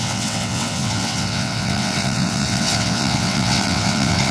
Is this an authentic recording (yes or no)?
no